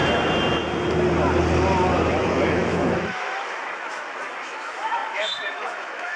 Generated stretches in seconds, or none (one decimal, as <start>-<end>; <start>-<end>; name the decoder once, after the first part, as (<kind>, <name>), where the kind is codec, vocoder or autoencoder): 2.1-6.2 (autoencoder, DAC-VAE)